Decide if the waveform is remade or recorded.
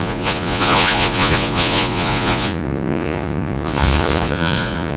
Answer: remade